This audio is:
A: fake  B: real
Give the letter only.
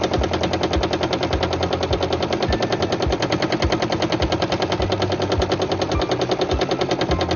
B